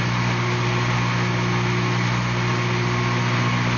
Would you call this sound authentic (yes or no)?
yes